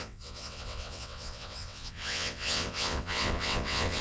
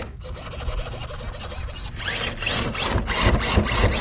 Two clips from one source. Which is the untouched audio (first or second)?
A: second